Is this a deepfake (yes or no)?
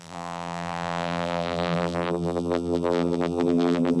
yes